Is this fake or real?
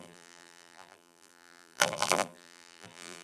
fake